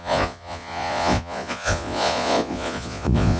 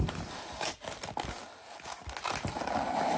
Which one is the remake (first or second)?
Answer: first